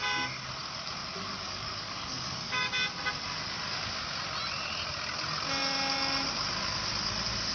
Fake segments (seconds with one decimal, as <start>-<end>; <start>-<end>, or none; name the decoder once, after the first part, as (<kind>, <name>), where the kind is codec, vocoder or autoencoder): 1.0-2.7 (codec, DAC)